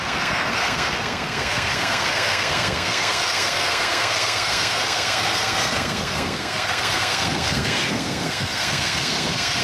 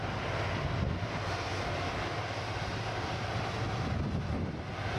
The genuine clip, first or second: second